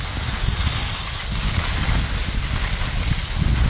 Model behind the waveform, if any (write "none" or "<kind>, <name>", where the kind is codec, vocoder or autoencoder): none